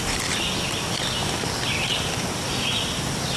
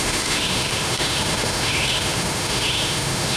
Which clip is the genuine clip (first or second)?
first